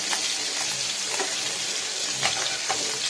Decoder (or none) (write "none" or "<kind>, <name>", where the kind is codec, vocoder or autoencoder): none